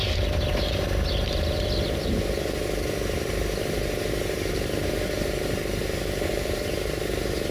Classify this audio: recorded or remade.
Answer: remade